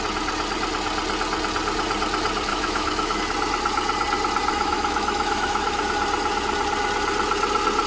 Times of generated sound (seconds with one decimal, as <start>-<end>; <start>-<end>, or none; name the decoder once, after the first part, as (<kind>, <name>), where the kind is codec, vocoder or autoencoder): 2.5-3.2 (autoencoder, DAC-VAE); 4.5-5.8